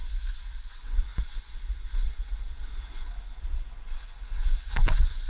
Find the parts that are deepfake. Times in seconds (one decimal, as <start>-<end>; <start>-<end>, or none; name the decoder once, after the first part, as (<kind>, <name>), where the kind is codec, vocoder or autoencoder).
0.7-5.3 (vocoder, Vocos)